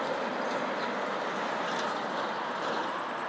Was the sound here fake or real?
real